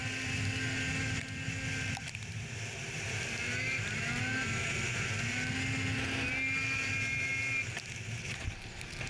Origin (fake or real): real